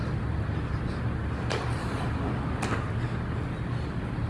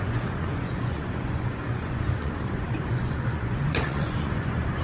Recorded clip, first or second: first